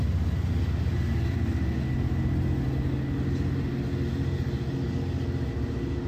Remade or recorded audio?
recorded